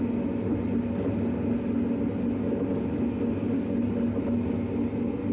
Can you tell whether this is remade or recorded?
recorded